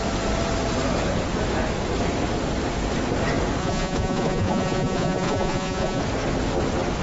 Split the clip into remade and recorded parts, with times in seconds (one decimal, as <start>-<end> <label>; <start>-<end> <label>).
0.0-3.6 recorded; 3.6-6.0 remade; 6.0-7.0 recorded